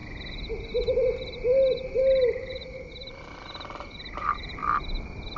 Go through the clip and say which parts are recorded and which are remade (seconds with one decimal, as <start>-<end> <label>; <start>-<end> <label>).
0.0-2.4 recorded; 2.4-4.6 remade; 4.6-5.4 recorded